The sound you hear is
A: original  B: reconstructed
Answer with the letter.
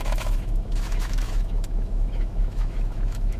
B